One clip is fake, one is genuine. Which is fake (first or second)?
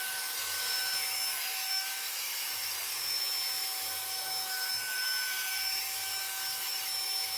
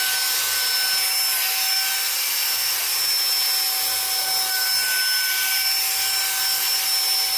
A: first